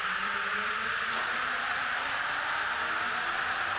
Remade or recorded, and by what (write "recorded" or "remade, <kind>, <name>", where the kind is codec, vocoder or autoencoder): remade, vocoder, BigVGAN v2